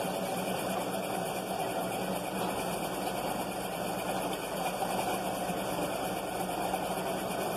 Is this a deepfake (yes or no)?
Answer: no